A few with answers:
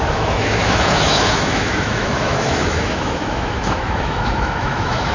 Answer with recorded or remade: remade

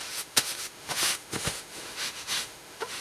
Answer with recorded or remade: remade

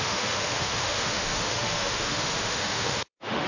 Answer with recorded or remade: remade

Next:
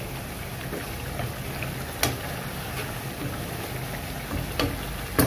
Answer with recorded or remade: recorded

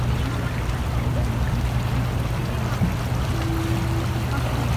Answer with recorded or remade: recorded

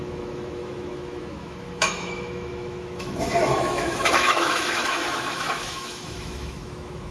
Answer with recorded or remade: remade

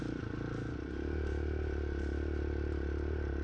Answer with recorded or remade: recorded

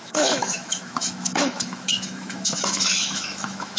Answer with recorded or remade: remade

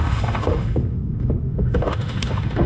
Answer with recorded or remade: remade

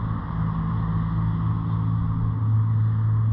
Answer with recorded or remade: recorded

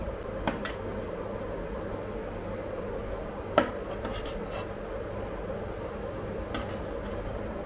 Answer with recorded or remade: recorded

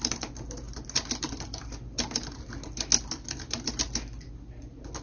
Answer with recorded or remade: recorded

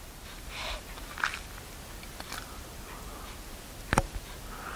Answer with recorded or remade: recorded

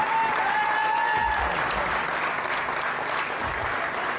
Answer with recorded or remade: recorded